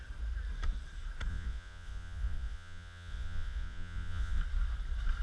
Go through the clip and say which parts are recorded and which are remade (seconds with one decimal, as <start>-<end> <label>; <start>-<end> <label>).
0.0-1.3 recorded; 1.3-4.4 remade; 4.4-5.2 recorded